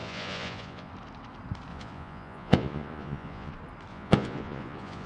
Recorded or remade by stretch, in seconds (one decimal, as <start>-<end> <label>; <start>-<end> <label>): 0.0-0.9 remade; 0.9-1.7 recorded; 1.7-3.5 remade; 3.5-3.9 recorded; 3.9-5.1 remade